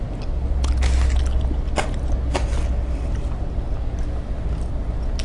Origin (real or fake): real